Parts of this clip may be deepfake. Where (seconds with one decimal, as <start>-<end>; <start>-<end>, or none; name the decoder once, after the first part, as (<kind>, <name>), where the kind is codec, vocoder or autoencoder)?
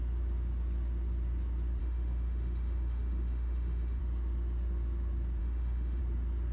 1.8-4.0 (autoencoder, DAC-VAE); 5.4-6.0